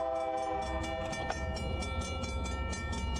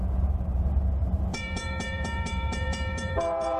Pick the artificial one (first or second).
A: second